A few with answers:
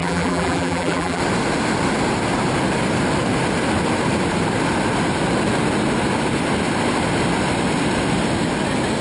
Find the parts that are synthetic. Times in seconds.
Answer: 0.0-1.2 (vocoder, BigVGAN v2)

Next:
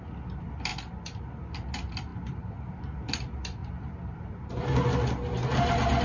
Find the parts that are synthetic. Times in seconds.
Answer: 2.1-2.7 (vocoder, BigVGAN v2); 3.6-4.2

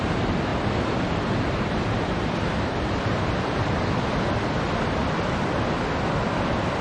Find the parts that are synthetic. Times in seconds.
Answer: 0.0-6.8 (vocoder, BigVGAN v2)